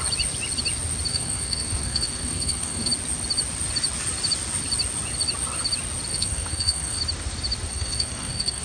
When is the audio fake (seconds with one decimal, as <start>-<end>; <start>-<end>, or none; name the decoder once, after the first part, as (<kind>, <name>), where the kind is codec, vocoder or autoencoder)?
1.1-2.9 (codec, SNAC); 6.1-7.0; 7.7-8.6